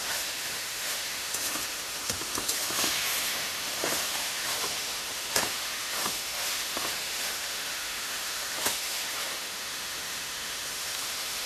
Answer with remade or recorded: remade